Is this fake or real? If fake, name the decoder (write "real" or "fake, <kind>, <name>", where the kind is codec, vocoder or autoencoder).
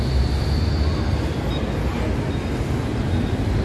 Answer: real